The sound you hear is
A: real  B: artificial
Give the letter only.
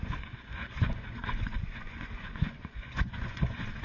B